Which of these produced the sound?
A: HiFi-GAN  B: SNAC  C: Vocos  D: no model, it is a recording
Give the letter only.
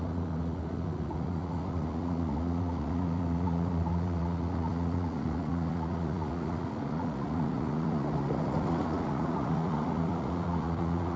C